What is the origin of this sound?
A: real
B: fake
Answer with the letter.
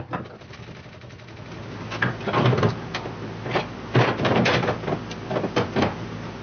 A